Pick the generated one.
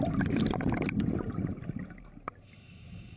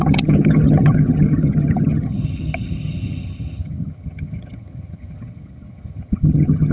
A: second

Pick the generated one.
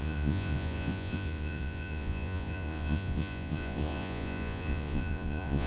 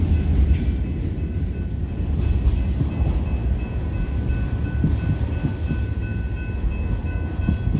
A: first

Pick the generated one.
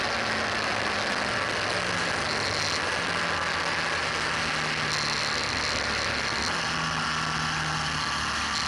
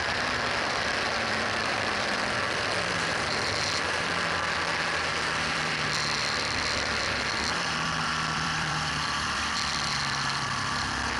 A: second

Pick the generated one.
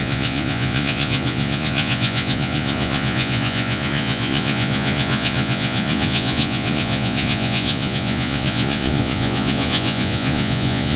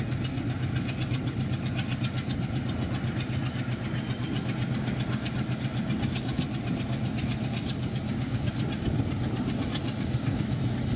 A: first